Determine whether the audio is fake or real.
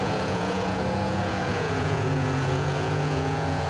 fake